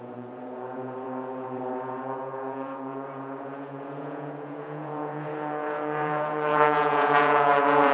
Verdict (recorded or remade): remade